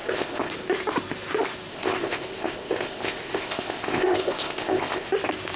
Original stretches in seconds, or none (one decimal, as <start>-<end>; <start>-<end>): 0.5-1.7; 5.1-5.6